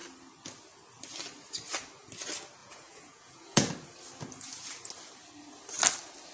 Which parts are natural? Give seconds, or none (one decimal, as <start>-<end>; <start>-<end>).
0.0-2.6; 3.7-6.3